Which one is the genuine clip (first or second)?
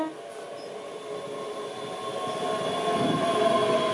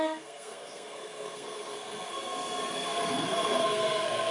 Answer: first